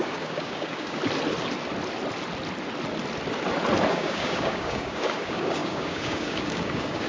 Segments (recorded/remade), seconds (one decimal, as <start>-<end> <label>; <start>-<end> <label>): 0.0-1.0 remade; 1.0-3.9 recorded; 3.9-7.1 remade